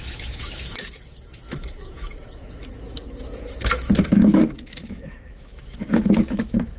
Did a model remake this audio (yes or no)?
yes